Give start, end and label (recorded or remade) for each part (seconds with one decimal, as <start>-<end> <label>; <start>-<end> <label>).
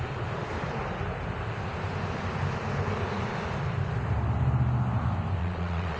0.0-5.4 recorded; 5.4-6.0 remade